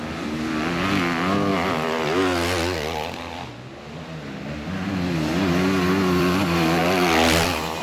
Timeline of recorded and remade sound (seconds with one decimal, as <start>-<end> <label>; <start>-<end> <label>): 0.0-7.8 recorded